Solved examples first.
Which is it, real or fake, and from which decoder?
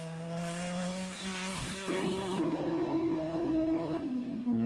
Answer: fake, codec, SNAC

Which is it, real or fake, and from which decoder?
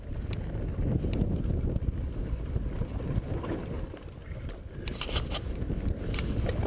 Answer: real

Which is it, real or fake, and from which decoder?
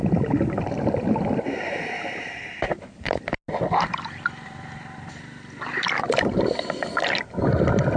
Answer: real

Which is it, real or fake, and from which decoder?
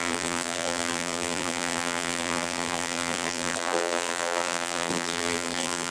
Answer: fake, vocoder, BigVGAN v2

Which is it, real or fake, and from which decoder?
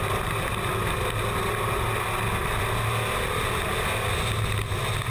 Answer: real